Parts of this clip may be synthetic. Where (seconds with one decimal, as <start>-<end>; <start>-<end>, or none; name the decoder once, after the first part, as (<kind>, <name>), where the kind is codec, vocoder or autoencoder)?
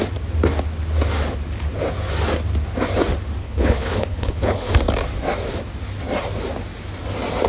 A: 3.4-4.7 (codec, HILCodec)